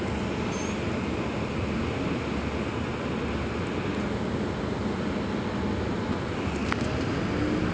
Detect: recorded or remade recorded